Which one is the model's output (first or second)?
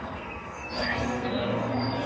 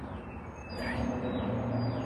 first